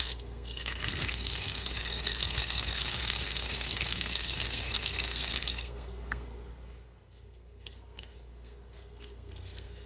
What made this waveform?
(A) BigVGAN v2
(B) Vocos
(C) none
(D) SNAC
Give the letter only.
D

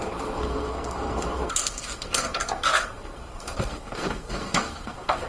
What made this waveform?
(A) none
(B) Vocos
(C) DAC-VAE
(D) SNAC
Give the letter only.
D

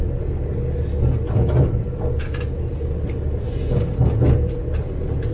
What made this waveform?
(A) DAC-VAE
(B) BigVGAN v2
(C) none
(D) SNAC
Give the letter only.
C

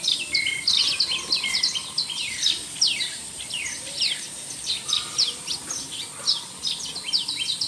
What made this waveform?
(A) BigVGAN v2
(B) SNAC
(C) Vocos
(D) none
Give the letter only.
D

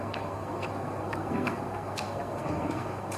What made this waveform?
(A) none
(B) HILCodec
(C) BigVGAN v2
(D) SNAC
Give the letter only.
D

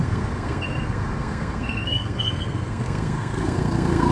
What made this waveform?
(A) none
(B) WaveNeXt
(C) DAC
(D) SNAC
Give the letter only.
D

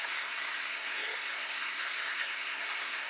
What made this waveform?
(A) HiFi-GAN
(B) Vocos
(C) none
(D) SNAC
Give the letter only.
D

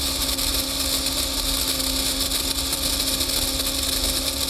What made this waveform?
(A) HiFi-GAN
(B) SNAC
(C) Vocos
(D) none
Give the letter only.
D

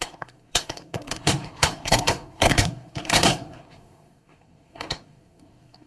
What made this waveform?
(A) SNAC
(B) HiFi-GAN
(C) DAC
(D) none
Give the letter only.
A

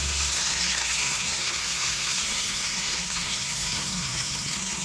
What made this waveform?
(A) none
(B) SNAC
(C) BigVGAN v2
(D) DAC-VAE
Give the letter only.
B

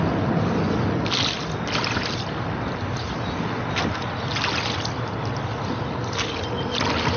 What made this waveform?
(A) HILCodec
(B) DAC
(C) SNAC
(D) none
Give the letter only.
D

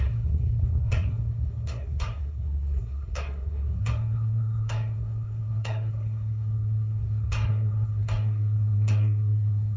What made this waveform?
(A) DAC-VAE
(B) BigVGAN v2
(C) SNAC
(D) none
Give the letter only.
C